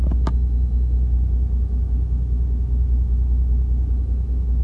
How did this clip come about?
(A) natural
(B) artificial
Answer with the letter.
A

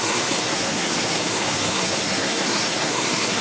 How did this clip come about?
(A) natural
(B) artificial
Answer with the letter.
B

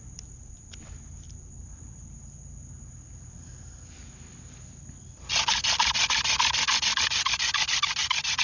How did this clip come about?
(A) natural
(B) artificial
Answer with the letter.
A